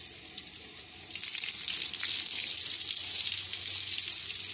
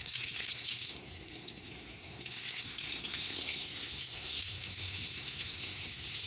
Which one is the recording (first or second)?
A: first